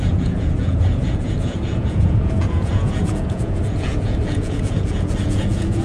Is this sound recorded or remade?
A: remade